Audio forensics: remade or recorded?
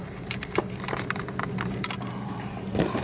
recorded